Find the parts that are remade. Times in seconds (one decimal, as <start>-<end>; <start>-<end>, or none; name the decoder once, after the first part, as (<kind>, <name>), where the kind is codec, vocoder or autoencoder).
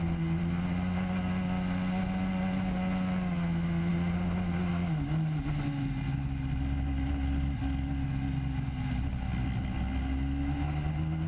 none